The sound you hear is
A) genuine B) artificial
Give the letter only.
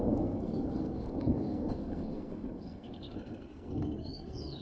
B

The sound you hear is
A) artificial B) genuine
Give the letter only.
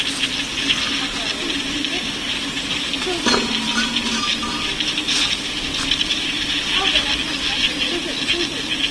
B